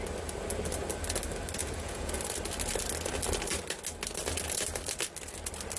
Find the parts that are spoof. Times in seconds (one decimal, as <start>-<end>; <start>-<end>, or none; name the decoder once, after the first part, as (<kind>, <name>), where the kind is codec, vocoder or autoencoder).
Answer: 1.6-2.2 (vocoder, Vocos)